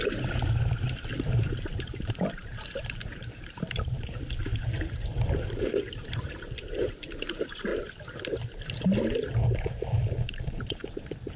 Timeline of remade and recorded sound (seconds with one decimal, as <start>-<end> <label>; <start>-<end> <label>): 0.0-7.7 remade; 7.7-10.5 recorded; 10.5-11.4 remade